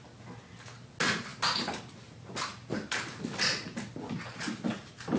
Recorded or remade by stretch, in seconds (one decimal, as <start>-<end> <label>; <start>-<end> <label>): 0.0-5.2 recorded